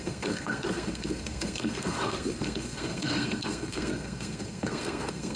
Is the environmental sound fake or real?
fake